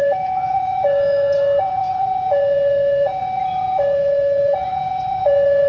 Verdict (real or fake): fake